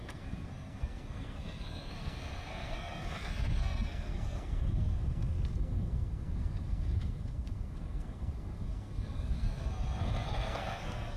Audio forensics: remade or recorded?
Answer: remade